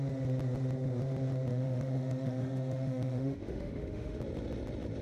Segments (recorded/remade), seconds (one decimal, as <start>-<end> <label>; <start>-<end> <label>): 0.0-1.5 recorded; 1.5-4.2 remade; 4.2-5.0 recorded